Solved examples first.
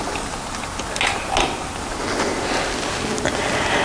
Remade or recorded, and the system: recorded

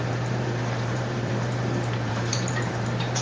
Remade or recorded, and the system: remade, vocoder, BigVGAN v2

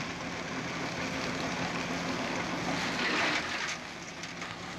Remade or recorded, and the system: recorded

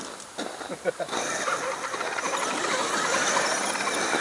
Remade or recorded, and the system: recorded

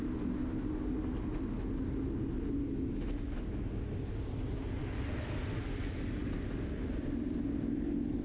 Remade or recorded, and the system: recorded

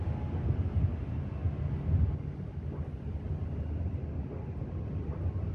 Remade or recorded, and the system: recorded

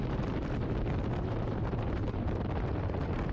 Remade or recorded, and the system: remade, vocoder, BigVGAN v2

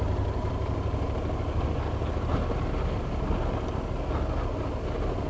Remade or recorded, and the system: recorded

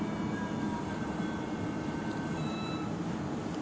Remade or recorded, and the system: remade, vocoder, BigVGAN v2